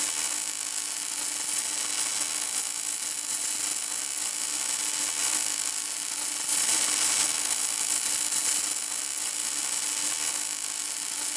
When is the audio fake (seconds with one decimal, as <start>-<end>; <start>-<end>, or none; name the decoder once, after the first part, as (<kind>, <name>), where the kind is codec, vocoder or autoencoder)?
5.2-5.7 (vocoder, BigVGAN v2); 6.5-8.6